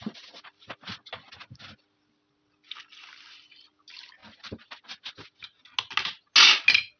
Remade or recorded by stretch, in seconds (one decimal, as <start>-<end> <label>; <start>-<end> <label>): 0.0-4.2 recorded; 4.2-5.1 remade; 5.1-7.0 recorded